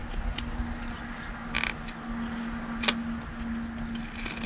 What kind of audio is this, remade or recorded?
recorded